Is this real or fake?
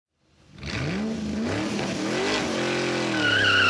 real